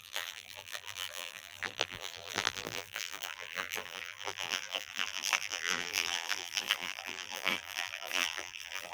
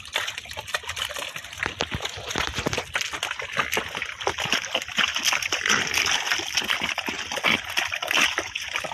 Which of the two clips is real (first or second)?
second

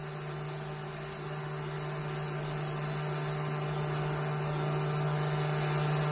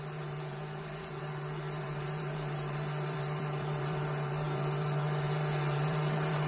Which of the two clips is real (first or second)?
first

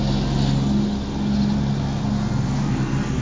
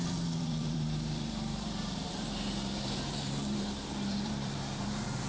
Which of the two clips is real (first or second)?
first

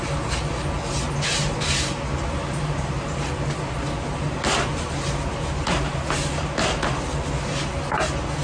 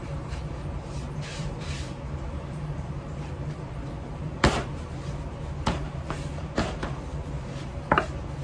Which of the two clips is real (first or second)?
first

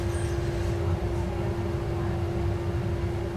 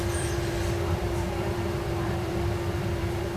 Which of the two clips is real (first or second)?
first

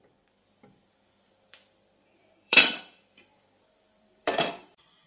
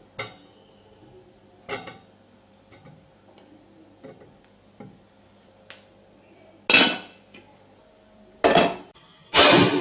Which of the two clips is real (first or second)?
second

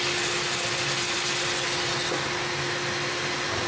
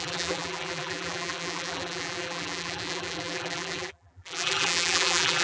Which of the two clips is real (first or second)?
first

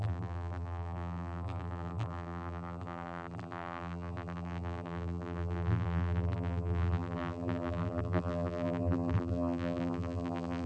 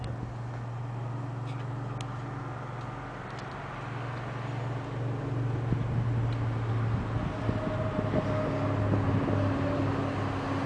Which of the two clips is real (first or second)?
second